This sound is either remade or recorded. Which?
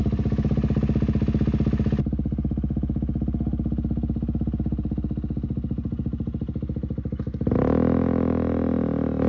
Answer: recorded